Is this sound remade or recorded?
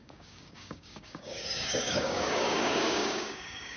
remade